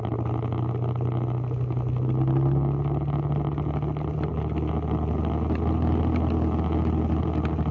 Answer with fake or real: real